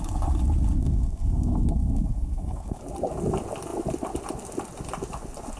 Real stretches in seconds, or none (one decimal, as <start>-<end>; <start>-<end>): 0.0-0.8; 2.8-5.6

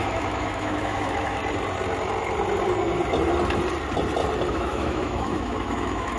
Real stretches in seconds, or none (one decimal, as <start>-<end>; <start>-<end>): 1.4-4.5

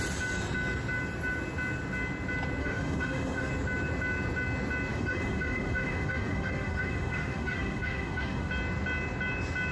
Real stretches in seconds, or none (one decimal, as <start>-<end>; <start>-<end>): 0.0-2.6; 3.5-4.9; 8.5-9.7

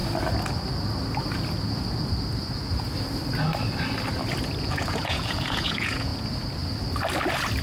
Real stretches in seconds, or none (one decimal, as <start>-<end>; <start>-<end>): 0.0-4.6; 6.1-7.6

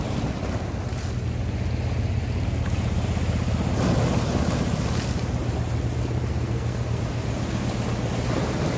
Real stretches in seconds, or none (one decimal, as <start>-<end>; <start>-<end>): 0.0-6.3; 7.0-8.8